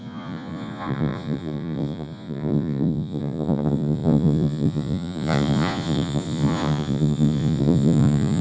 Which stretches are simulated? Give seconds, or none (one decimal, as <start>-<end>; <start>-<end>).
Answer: 0.0-8.4